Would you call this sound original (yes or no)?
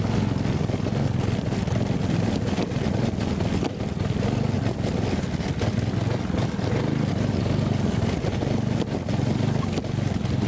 yes